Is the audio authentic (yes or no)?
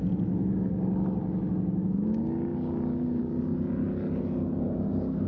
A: yes